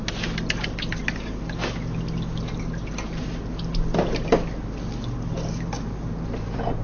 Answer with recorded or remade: recorded